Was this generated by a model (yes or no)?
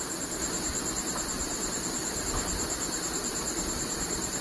no